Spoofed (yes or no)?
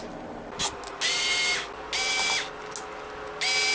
no